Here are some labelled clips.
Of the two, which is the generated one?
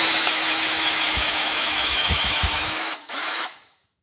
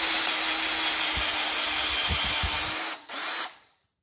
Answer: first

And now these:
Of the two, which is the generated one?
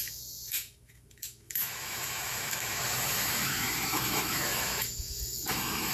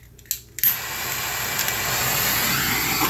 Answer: first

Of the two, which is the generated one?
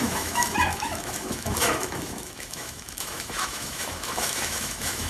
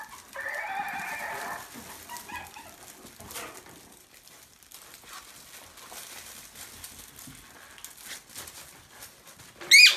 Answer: first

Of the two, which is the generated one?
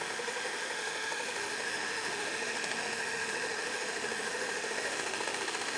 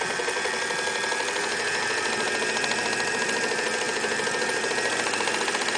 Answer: first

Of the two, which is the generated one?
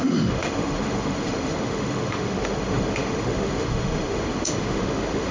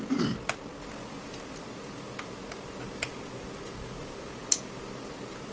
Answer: first